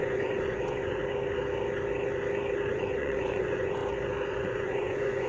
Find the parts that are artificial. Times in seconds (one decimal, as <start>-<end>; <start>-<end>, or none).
0.0-1.0; 2.7-3.8; 4.3-5.3